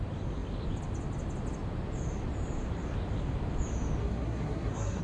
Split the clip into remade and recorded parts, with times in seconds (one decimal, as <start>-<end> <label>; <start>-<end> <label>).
0.0-4.0 recorded; 4.0-5.0 remade